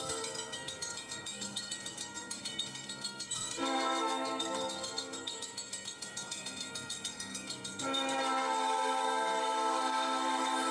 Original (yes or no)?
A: no